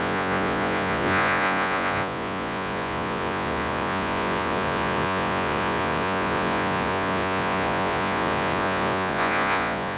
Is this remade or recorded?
remade